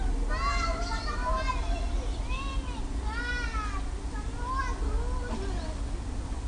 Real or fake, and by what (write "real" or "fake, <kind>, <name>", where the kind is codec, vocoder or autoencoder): real